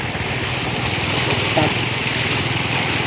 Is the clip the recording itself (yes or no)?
yes